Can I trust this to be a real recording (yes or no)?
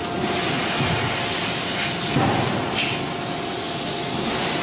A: yes